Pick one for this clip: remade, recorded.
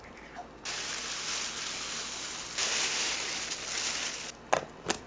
recorded